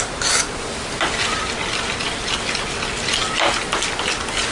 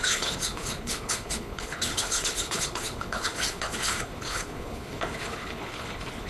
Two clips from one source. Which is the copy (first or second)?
second